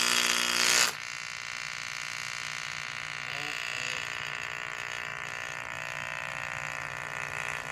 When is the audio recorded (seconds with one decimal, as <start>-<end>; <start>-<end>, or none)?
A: 0.0-7.7